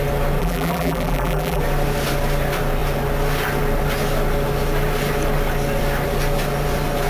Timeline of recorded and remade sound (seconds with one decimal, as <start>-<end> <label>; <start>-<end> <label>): 0.0-0.4 recorded; 0.4-1.6 remade; 1.6-7.1 recorded